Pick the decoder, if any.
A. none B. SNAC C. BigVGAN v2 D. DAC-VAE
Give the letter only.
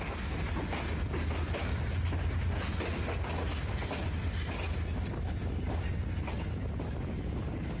A